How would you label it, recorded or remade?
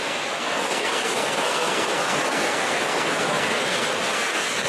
remade